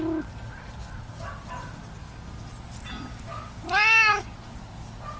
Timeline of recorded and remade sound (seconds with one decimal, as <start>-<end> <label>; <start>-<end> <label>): 0.0-5.2 recorded